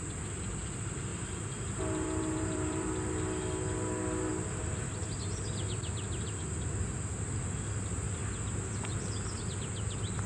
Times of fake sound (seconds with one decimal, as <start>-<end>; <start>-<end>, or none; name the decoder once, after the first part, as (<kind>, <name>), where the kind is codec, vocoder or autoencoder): 1.1-2.9 (vocoder, BigVGAN v2)